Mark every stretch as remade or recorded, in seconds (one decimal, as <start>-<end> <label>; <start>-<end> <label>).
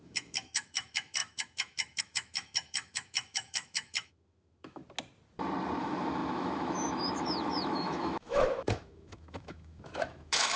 0.0-4.8 remade; 4.8-5.8 recorded; 5.8-10.6 remade